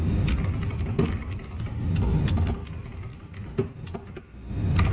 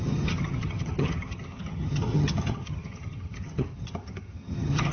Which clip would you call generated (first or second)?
second